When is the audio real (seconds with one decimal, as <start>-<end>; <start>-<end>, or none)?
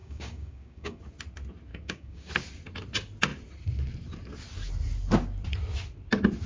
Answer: 1.0-1.7; 2.3-6.5